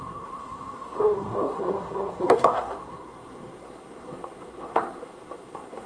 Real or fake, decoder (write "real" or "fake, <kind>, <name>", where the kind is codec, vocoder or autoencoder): fake, codec, SNAC